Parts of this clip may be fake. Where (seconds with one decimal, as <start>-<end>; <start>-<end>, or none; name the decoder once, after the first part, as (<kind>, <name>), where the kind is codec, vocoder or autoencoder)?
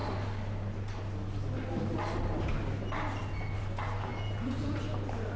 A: 4.1-4.8 (vocoder, Vocos)